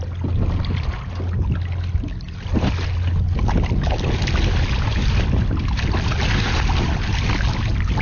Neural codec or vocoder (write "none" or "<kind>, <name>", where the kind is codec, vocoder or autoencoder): none